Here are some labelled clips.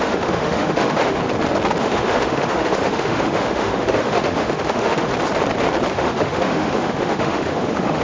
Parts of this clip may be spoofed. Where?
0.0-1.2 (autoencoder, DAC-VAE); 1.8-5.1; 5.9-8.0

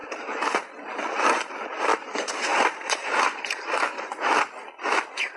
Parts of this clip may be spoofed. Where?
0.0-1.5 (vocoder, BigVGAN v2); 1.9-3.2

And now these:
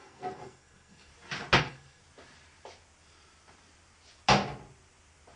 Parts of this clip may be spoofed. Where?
0.0-1.1 (codec, SNAC); 1.6-2.0

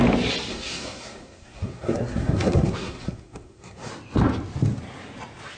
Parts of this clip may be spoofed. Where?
0.5-3.9 (codec, SNAC)

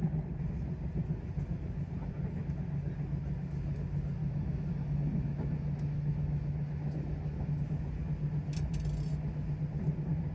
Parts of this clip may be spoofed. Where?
4.2-7.6 (autoencoder, DAC-VAE)

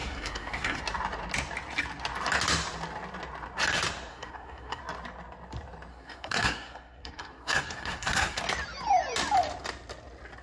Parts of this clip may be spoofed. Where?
0.0-0.8 (codec, SNAC); 4.1-4.8; 5.9-8.4

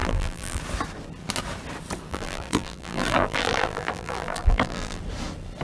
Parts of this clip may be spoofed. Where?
0.0-0.6 (vocoder, BigVGAN v2); 2.1-5.0

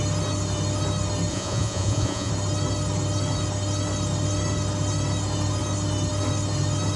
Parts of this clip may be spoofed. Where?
1.3-2.3 (vocoder, Vocos)